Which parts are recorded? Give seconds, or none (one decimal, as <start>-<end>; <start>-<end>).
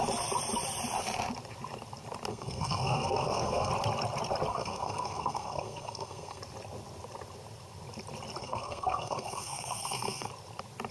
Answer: 0.0-2.3; 3.7-4.5; 6.4-8.4; 10.3-10.9